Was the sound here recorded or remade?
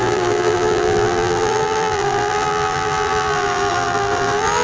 remade